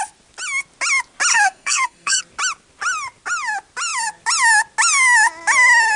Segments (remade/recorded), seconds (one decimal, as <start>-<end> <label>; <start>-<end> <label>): 0.0-1.3 recorded; 1.3-2.2 remade; 2.2-6.0 recorded